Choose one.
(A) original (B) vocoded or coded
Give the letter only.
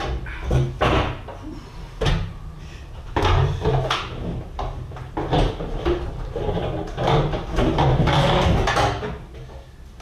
A